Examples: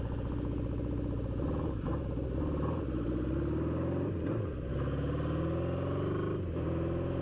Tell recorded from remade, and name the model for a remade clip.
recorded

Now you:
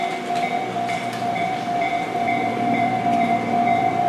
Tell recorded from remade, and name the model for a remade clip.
remade, vocoder, BigVGAN v2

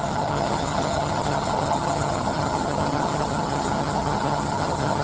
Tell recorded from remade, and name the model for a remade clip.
remade, vocoder, HiFi-GAN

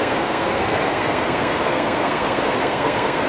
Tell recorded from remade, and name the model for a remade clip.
remade, codec, SNAC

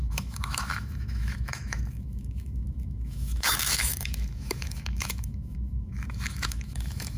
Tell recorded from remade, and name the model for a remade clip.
remade, autoencoder, DAC-VAE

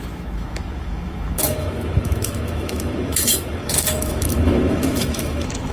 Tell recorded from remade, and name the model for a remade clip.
remade, autoencoder, DAC-VAE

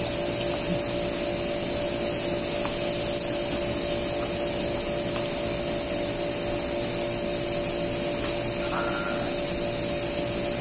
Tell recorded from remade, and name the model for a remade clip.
recorded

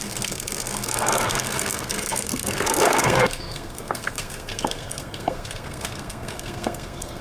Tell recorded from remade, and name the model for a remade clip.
remade, codec, SNAC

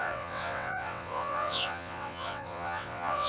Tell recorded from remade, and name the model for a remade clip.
remade, vocoder, WaveNeXt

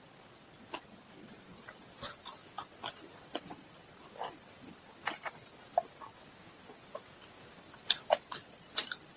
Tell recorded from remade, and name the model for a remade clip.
recorded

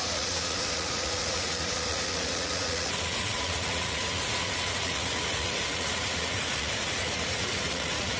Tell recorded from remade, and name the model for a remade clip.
remade, vocoder, Vocos